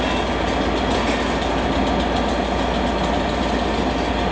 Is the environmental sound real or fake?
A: real